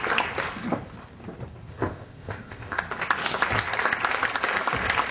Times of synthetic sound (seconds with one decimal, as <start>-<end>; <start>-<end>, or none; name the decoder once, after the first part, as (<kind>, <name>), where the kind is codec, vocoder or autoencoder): 1.7-2.8 (codec, ZipCodec)

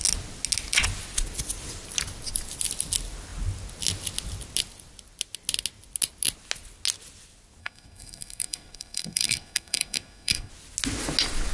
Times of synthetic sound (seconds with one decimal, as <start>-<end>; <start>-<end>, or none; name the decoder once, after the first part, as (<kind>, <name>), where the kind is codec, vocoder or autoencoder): 7.6-10.5 (codec, SNAC)